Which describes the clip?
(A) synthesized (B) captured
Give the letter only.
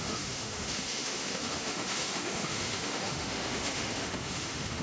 A